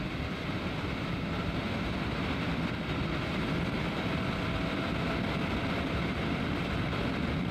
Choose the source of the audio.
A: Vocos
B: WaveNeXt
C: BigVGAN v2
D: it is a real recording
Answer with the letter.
C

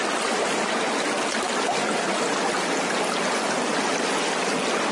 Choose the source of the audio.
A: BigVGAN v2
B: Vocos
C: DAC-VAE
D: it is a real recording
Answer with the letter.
D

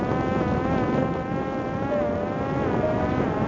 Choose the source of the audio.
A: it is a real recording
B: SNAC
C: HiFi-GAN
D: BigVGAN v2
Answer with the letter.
A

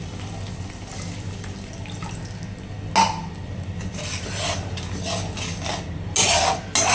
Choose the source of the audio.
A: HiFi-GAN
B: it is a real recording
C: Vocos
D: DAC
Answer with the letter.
B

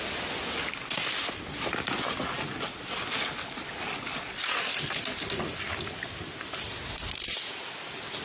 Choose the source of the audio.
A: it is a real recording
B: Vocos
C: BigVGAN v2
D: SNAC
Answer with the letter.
A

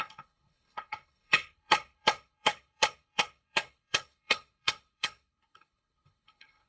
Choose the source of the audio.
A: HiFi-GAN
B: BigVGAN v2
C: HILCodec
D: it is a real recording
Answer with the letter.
C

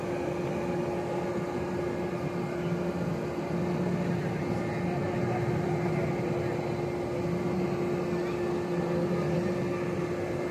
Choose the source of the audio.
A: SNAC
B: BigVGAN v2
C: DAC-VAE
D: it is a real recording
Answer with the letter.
D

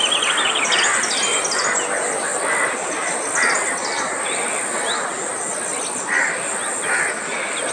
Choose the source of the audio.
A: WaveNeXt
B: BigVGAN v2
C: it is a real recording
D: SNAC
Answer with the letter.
C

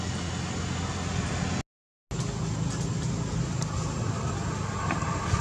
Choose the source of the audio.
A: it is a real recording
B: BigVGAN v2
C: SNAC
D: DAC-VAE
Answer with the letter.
A